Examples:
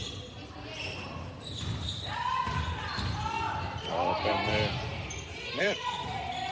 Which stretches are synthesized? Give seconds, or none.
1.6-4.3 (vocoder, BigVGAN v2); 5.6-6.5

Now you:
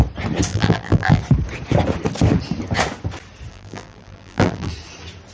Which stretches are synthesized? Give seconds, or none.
0.5-1.2 (vocoder, BigVGAN v2); 3.5-4.7

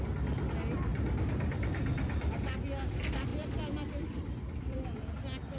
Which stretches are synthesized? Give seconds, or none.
0.9-2.4 (vocoder, BigVGAN v2); 3.3-5.1

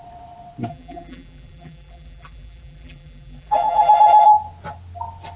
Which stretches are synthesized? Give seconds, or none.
0.7-3.9 (vocoder, BigVGAN v2)

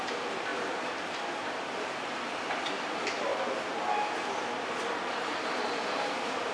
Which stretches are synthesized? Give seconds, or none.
0.0-0.5 (vocoder, BigVGAN v2); 1.1-3.3; 5.0-6.5

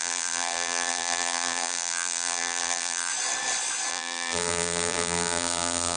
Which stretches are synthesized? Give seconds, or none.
0.0-3.1 (vocoder, BigVGAN v2); 3.9-6.0